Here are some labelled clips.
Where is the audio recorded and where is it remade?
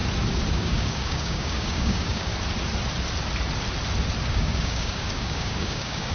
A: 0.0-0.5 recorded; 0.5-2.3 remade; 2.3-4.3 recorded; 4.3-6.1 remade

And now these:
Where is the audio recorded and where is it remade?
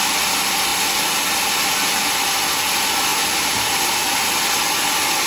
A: 0.0-3.1 recorded; 3.1-4.2 remade; 4.2-5.3 recorded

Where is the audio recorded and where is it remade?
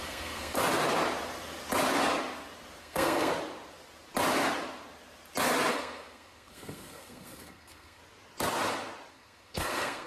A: 0.0-0.6 remade; 0.6-2.8 recorded; 2.8-3.3 remade; 3.3-5.7 recorded; 5.7-8.0 remade; 8.0-9.1 recorded; 9.1-10.1 remade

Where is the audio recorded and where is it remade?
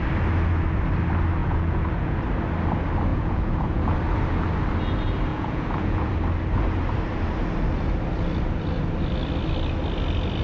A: 0.0-1.4 recorded; 1.4-2.2 remade; 2.2-3.1 recorded; 3.1-3.8 remade; 3.8-5.3 recorded; 5.3-6.1 remade; 6.1-10.4 recorded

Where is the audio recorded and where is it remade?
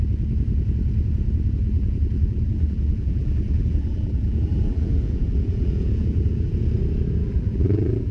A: 0.0-1.6 recorded; 1.6-6.5 remade; 6.5-7.2 recorded; 7.2-8.1 remade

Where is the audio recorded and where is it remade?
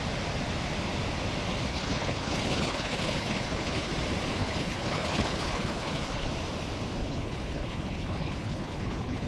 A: 0.0-1.7 recorded; 1.7-3.9 remade; 3.9-4.4 recorded; 4.4-6.3 remade; 6.3-7.0 recorded; 7.0-9.3 remade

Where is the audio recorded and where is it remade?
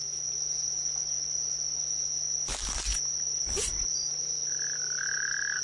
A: 0.0-5.6 recorded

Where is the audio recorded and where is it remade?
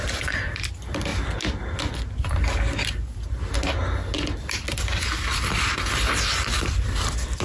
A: 0.0-1.1 remade; 1.1-4.8 recorded; 4.8-7.4 remade